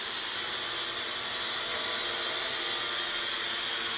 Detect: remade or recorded recorded